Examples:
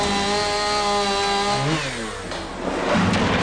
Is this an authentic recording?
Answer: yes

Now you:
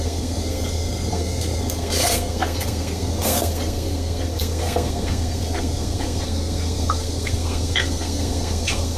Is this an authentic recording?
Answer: no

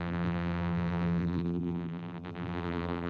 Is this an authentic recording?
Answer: no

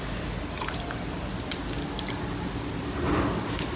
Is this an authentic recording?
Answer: yes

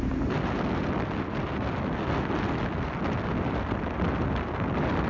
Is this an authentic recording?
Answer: yes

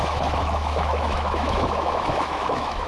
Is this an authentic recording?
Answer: no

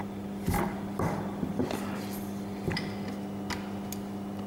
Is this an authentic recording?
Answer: yes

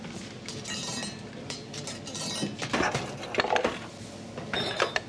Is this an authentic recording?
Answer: yes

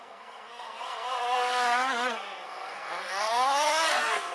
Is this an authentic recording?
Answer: no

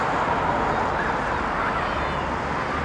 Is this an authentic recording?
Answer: yes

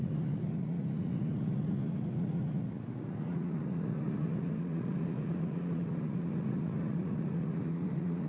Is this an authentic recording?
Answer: no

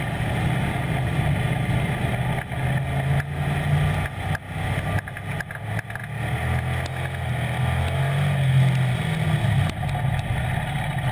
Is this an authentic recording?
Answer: yes